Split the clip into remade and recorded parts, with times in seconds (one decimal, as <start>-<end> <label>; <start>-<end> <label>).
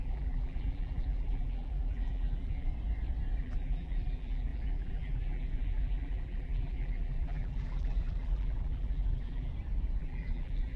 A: 0.0-2.7 remade; 2.7-3.4 recorded; 3.4-9.5 remade; 9.5-10.0 recorded; 10.0-10.8 remade